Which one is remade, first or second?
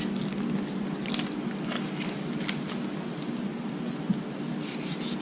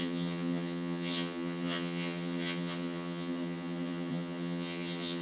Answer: second